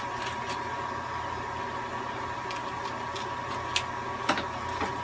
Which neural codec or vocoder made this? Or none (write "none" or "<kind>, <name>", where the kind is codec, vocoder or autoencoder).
none